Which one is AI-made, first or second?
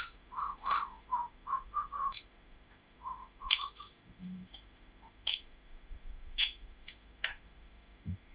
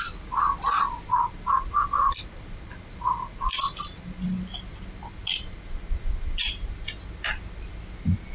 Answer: first